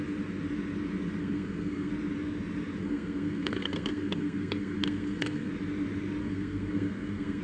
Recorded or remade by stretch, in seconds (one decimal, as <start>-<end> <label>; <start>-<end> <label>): 0.0-1.2 recorded; 1.2-1.9 remade; 1.9-2.8 recorded; 2.8-5.5 remade; 5.5-6.2 recorded; 6.2-7.4 remade